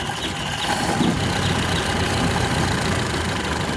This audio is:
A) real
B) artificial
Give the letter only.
A